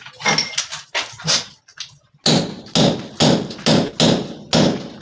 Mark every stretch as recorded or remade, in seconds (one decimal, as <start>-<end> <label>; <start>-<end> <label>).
0.0-5.0 recorded